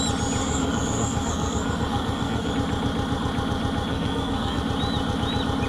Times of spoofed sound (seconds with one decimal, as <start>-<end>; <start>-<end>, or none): 0.4-2.5; 3.9-4.6